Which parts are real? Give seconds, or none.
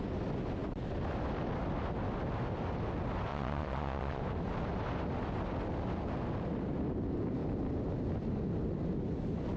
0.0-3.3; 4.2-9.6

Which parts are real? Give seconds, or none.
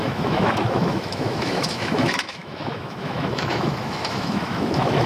none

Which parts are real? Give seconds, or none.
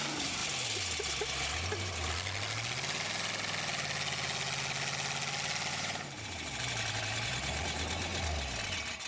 0.4-5.7; 8.1-9.1